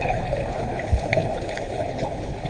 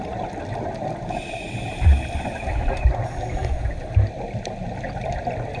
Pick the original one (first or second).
second